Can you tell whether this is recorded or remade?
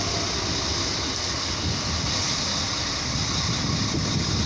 recorded